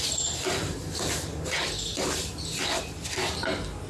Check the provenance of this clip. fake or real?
real